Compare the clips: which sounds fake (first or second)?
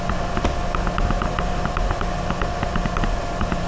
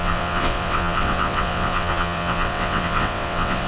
second